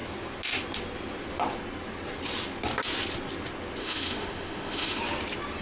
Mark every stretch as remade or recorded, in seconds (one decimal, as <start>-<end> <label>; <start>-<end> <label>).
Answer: 0.0-3.8 recorded; 3.8-5.0 remade; 5.0-5.6 recorded